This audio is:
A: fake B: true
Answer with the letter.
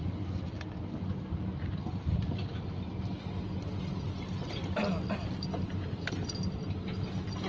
B